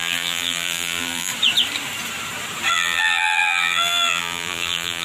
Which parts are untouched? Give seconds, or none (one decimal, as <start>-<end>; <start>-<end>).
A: 1.3-2.7